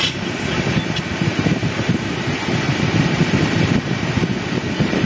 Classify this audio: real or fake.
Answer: fake